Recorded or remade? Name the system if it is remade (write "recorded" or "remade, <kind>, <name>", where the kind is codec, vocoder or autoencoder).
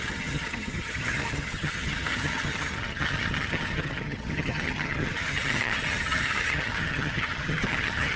remade, vocoder, HiFi-GAN